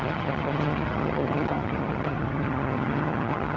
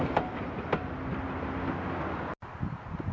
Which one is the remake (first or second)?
first